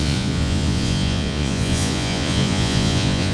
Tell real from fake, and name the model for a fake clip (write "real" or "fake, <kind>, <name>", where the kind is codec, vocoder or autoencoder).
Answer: fake, vocoder, Vocos